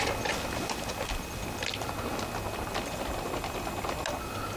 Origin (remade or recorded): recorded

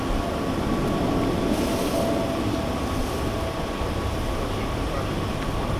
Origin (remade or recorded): recorded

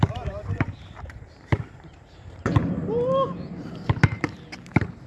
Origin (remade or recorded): remade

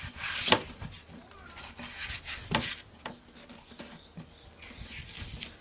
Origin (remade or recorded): recorded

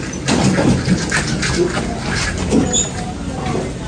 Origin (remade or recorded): recorded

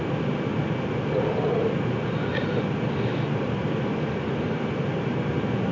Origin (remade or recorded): recorded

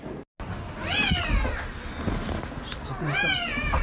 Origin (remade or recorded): recorded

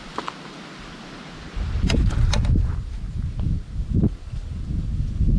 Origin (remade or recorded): recorded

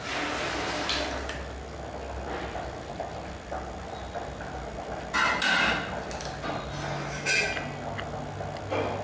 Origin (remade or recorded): recorded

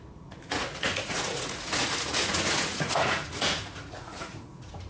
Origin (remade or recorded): remade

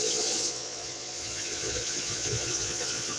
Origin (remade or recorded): remade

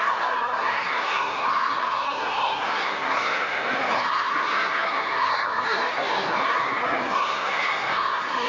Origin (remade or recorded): remade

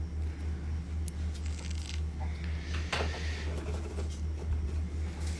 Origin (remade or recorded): recorded